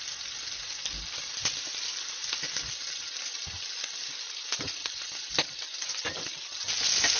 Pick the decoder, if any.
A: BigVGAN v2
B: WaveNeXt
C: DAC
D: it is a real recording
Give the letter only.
D